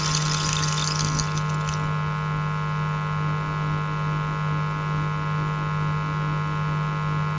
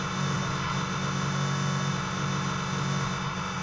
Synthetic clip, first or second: second